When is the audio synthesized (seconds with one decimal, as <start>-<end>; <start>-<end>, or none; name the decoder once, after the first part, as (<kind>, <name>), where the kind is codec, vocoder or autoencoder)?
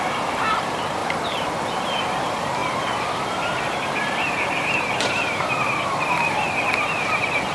0.0-1.0 (vocoder, BigVGAN v2); 2.2-7.5